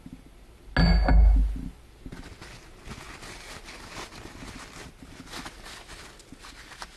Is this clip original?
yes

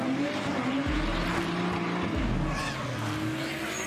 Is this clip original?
yes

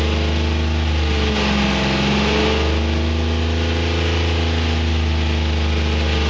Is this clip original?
yes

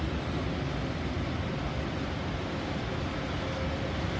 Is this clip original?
yes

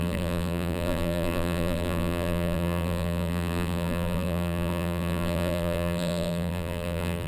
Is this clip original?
no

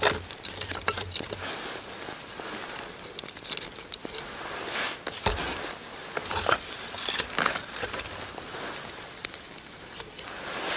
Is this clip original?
yes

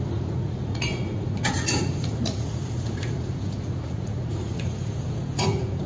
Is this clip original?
no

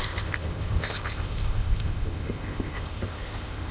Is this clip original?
no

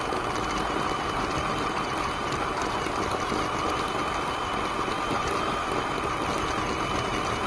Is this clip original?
yes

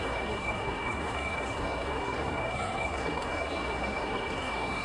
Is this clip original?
no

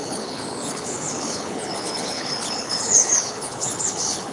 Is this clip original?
no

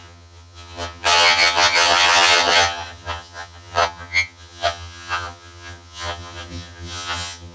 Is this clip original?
no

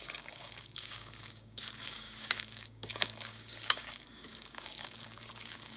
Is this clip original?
no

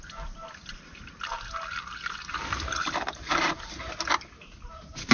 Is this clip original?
yes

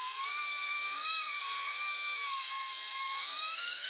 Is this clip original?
no